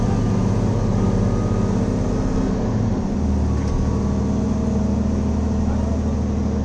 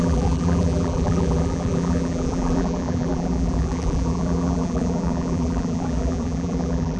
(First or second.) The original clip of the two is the first